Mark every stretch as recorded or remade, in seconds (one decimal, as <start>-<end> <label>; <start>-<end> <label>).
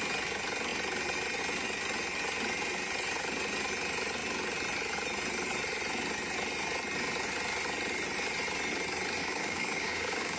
0.0-9.2 recorded; 9.2-10.4 remade